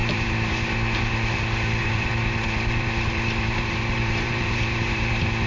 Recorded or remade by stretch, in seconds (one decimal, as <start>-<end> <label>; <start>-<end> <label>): 0.0-1.4 remade; 1.4-1.8 recorded; 1.8-5.1 remade; 5.1-5.5 recorded